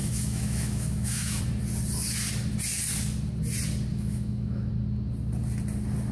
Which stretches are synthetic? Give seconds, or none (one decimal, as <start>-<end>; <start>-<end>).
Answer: 0.0-1.4; 3.9-4.7